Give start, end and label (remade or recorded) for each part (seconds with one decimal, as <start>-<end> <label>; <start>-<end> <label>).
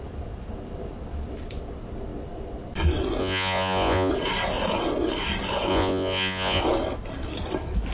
0.0-3.2 recorded; 3.2-4.1 remade; 4.1-5.7 recorded; 5.7-6.6 remade; 6.6-7.9 recorded